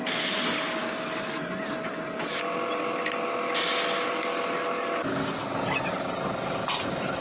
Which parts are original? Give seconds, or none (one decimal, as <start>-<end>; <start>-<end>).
0.0-7.2